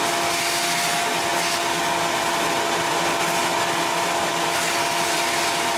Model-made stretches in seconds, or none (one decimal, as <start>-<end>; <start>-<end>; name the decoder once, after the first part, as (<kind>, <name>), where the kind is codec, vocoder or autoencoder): none